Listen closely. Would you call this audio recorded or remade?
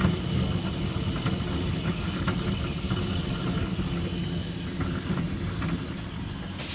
recorded